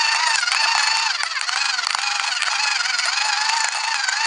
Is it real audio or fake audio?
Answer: real